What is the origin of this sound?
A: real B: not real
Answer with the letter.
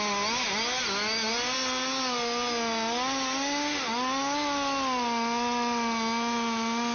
A